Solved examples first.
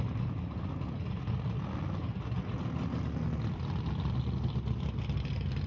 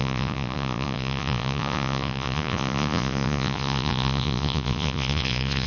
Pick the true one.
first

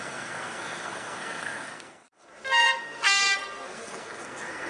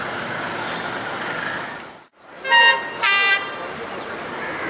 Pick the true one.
second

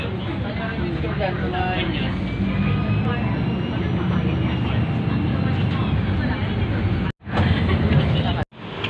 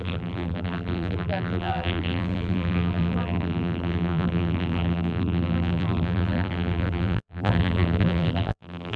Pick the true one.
first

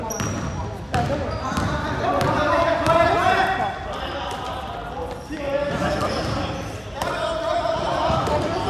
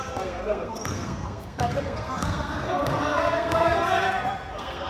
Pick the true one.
first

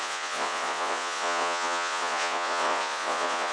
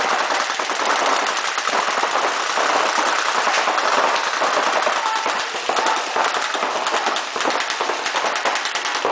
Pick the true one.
second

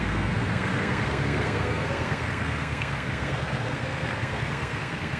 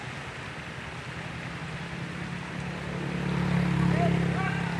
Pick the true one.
second